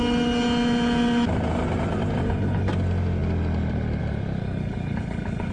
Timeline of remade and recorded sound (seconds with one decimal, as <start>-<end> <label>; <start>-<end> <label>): 0.0-2.2 recorded; 2.2-2.7 remade; 2.7-4.4 recorded; 4.4-5.5 remade